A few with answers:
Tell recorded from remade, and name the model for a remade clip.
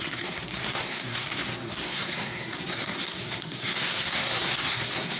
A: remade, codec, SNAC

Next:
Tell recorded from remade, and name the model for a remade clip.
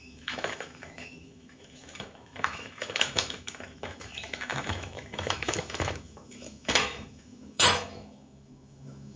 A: remade, autoencoder, DAC-VAE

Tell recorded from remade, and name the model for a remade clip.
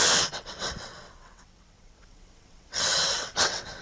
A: remade, vocoder, WaveNeXt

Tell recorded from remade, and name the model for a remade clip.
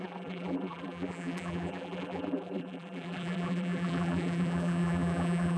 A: remade, vocoder, BigVGAN v2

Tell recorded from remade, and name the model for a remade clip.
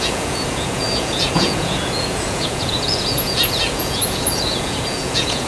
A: remade, vocoder, Vocos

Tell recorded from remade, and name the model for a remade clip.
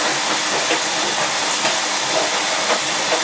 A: recorded